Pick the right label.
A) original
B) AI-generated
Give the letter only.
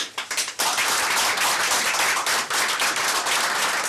A